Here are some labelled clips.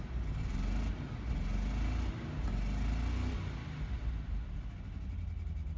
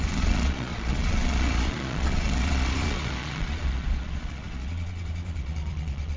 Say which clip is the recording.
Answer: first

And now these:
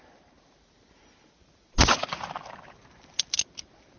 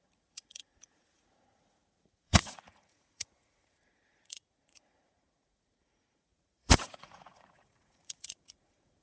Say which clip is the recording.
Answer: first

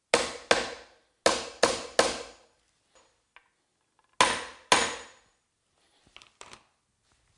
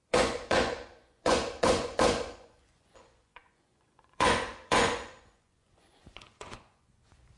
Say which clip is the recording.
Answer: first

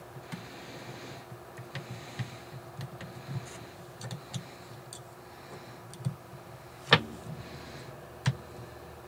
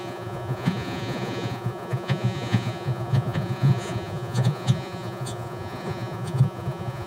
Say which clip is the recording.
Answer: first